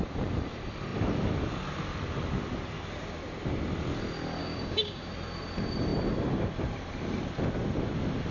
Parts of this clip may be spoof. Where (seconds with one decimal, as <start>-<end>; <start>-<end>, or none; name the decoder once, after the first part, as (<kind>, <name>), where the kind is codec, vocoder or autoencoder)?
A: 4.4-5.1 (codec, DAC)